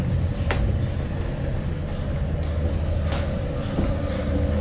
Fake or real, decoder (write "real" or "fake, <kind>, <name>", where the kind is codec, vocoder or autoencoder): real